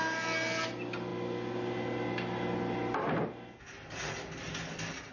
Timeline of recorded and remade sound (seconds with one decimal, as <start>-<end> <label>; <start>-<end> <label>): 0.0-5.1 recorded